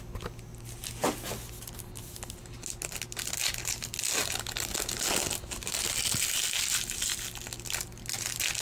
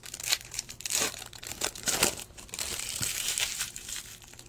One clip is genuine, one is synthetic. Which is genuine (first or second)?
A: first